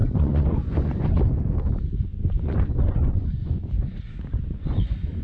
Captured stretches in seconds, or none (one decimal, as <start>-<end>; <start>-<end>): 1.2-2.1